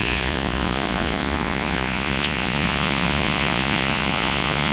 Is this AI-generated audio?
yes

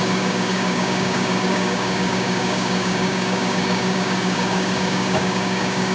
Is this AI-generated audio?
yes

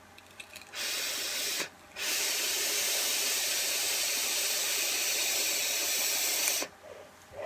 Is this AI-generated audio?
yes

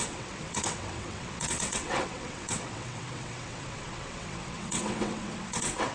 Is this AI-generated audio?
yes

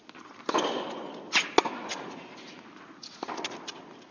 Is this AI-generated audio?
no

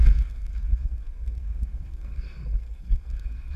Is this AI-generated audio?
yes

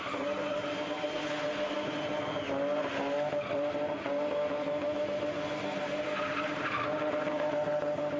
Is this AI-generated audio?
no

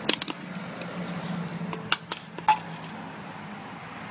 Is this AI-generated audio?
no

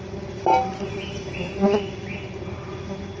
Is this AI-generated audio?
no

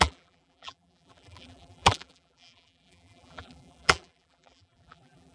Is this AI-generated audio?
yes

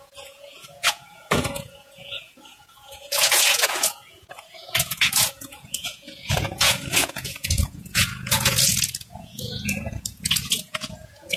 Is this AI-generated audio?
yes